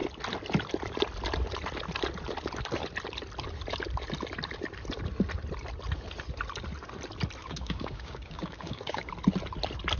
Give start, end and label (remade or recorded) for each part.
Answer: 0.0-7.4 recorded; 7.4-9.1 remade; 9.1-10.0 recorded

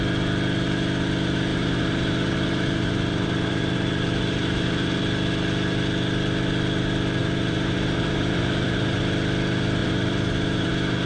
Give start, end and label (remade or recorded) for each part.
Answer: 0.0-1.5 recorded; 1.5-5.0 remade; 5.0-7.2 recorded; 7.2-9.0 remade; 9.0-9.8 recorded; 9.8-10.7 remade; 10.7-11.1 recorded

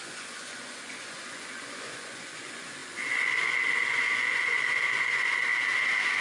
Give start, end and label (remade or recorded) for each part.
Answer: 0.0-5.5 remade; 5.5-6.2 recorded